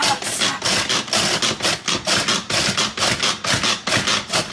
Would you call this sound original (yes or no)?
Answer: yes